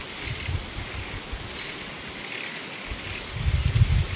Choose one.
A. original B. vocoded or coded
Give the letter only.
A